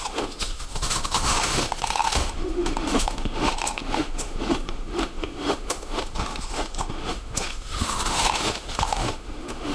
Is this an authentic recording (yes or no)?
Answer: no